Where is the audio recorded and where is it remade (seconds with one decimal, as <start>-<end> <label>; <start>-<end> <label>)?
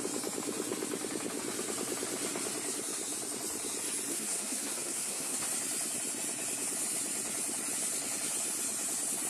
0.0-4.1 recorded; 4.1-5.4 remade; 5.4-9.3 recorded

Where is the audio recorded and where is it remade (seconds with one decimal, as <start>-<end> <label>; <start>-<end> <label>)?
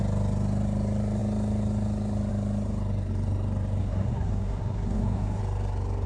0.0-3.8 recorded; 3.8-5.4 remade; 5.4-6.1 recorded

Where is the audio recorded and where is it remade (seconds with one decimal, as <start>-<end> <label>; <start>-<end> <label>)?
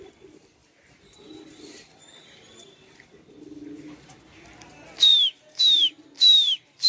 0.0-6.9 recorded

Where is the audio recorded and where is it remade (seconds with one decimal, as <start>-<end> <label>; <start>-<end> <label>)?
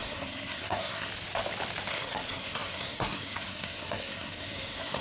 0.0-1.1 remade; 1.1-1.9 recorded; 1.9-5.0 remade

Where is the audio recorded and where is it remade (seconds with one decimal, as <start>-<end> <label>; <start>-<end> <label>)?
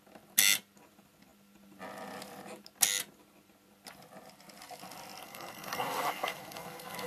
0.0-5.2 recorded; 5.2-7.1 remade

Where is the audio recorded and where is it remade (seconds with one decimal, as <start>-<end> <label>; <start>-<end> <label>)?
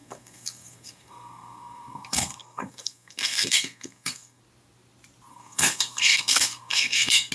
0.0-4.4 remade; 4.4-5.3 recorded; 5.3-7.3 remade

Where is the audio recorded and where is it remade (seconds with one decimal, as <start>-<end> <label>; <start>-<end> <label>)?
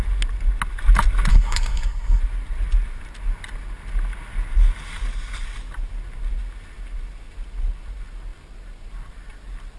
0.0-1.3 recorded; 1.3-2.2 remade; 2.2-9.8 recorded